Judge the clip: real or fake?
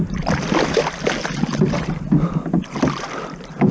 real